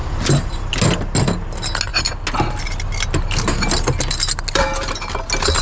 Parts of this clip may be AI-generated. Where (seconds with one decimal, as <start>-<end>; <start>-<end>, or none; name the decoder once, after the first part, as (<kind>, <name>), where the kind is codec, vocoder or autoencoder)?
none